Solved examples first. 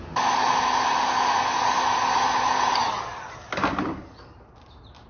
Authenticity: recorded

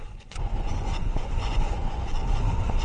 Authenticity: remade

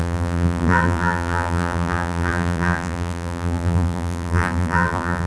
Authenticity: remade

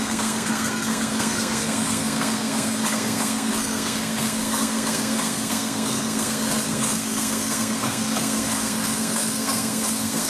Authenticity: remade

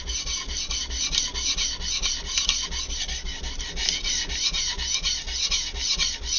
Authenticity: recorded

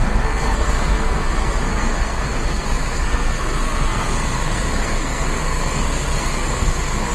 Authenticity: remade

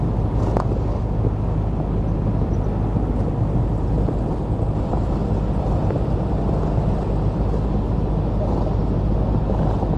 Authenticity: recorded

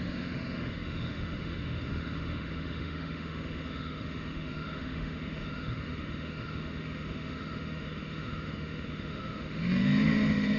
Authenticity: remade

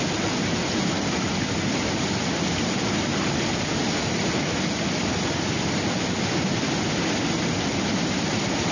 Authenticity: recorded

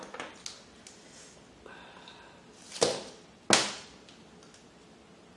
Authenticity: recorded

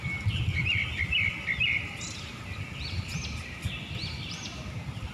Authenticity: recorded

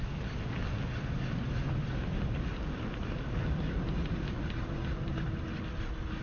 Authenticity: recorded